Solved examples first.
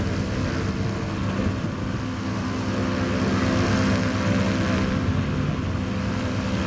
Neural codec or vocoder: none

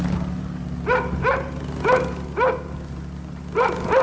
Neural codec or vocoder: none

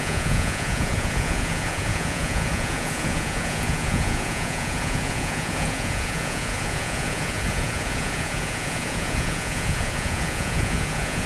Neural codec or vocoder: vocoder, Vocos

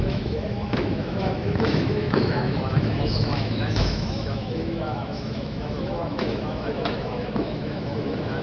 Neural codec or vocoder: autoencoder, DAC-VAE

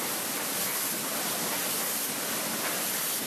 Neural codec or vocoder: none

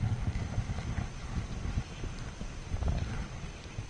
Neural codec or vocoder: none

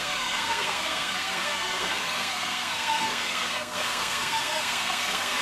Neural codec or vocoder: codec, SNAC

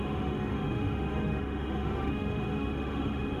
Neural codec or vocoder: autoencoder, DAC-VAE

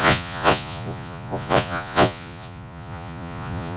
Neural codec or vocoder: vocoder, Vocos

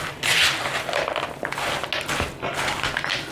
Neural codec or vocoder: none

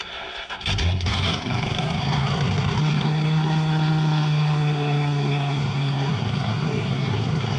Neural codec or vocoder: codec, SNAC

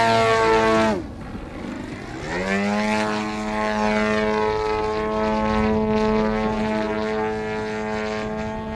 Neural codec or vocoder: none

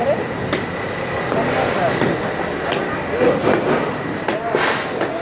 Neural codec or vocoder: none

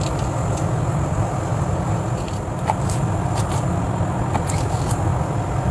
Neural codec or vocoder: none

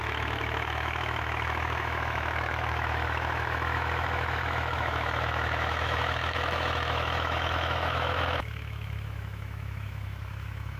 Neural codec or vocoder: autoencoder, DAC-VAE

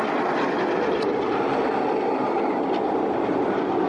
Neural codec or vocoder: none